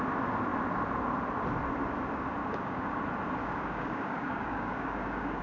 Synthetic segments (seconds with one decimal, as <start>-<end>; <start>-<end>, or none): 2.4-3.0; 3.4-5.4